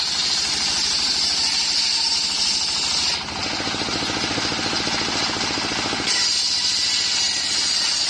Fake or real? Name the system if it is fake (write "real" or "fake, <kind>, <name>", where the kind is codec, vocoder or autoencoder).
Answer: real